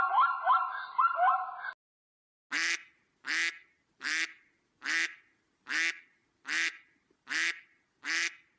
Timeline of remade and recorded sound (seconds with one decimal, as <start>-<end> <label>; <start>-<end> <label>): 0.0-8.6 recorded